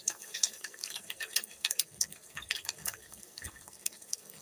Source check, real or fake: fake